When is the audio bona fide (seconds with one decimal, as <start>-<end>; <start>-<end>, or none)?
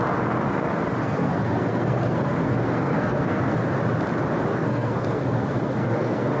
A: 0.0-1.0; 3.6-4.5